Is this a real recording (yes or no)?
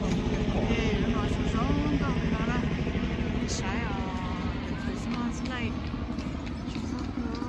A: yes